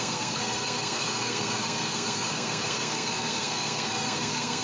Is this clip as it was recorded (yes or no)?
no